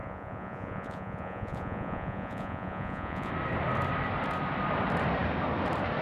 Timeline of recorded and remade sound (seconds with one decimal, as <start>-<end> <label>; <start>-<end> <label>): 0.0-3.3 remade; 3.3-6.0 recorded